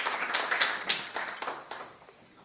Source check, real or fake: real